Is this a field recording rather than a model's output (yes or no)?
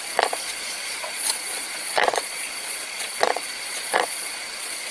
no